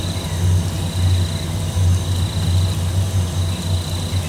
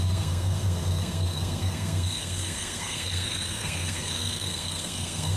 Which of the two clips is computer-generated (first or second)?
second